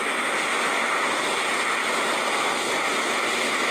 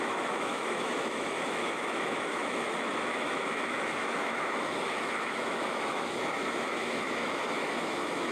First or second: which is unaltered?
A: first